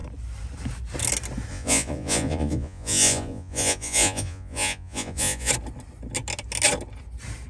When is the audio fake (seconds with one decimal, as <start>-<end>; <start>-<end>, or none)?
1.5-5.5